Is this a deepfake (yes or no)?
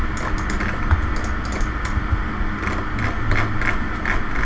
no